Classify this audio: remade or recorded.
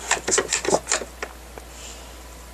recorded